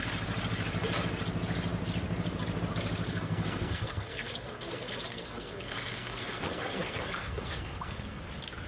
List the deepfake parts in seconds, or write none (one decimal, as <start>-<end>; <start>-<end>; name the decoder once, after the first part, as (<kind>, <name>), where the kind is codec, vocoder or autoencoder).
3.1-8.2 (codec, SNAC)